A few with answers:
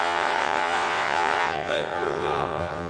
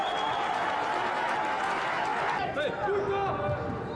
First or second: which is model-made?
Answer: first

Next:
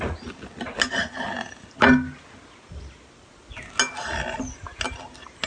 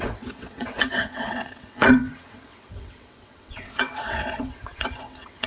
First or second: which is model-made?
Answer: second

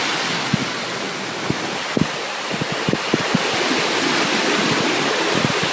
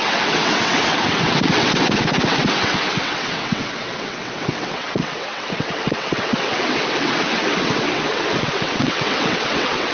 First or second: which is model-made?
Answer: second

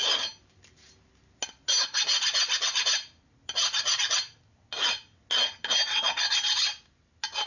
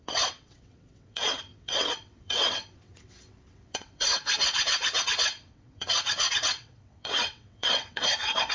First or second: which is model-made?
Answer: second